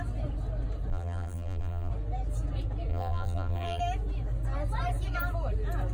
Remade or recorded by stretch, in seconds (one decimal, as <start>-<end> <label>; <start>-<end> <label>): 0.0-0.9 recorded; 0.9-1.9 remade; 1.9-2.9 recorded; 2.9-3.8 remade; 3.8-5.9 recorded